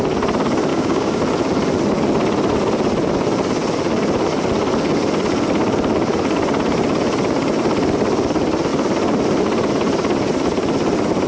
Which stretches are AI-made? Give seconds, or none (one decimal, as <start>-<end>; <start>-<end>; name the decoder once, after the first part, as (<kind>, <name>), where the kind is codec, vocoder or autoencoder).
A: 0.7-1.2 (codec, DAC)

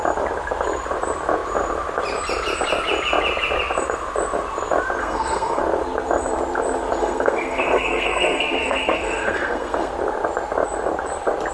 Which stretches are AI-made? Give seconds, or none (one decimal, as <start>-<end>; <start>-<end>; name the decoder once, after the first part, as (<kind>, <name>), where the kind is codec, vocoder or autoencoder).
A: 5.0-5.6 (codec, SNAC); 7.0-9.9

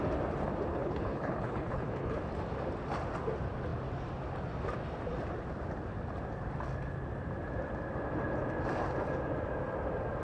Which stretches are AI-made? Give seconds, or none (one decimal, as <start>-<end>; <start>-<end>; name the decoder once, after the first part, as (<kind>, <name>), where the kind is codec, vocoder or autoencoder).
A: 0.7-2.2 (codec, HILCodec)